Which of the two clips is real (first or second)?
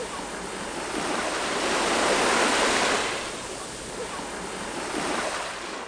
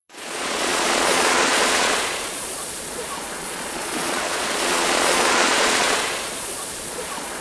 first